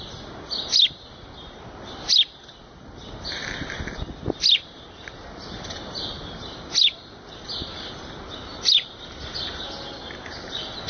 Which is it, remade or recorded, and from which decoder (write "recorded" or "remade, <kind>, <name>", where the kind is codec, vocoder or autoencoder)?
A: recorded